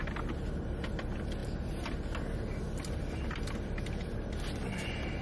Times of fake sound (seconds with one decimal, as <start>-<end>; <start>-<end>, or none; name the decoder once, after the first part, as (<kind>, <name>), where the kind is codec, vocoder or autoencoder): none